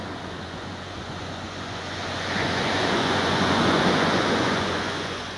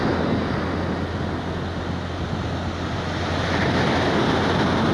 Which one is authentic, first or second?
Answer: second